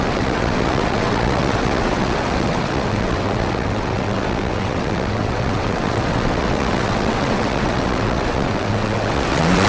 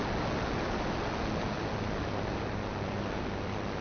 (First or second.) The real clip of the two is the second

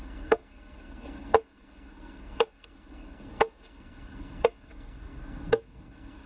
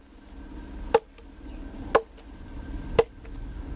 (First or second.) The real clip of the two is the second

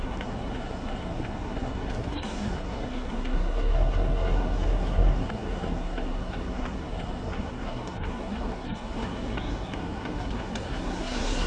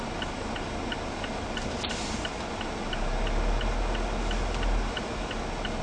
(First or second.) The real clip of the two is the second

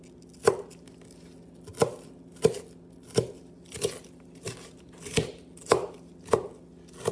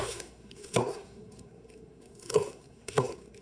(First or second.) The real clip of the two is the first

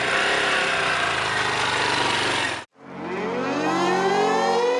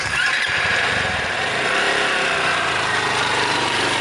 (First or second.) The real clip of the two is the first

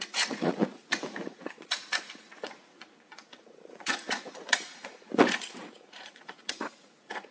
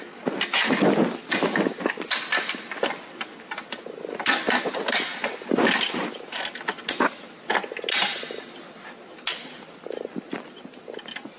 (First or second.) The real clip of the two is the second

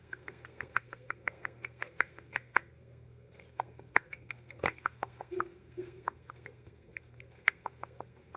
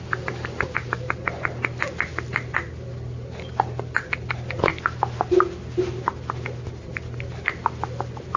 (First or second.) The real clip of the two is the second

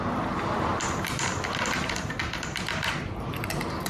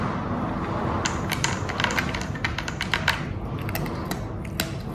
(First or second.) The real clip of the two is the second